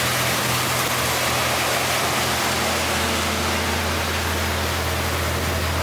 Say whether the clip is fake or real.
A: real